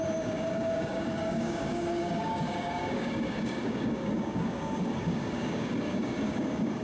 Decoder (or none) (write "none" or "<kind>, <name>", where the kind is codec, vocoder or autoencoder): codec, DAC